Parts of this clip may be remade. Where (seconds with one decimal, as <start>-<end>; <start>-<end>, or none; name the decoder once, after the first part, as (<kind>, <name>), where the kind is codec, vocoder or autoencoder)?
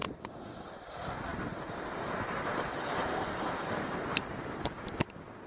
1.3-4.6 (vocoder, BigVGAN v2)